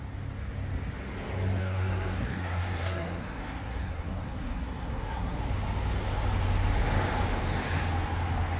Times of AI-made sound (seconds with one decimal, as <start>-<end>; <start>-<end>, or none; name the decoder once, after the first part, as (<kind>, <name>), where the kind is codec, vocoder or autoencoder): 1.6-5.4 (codec, SNAC)